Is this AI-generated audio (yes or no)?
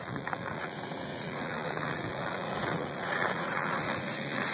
yes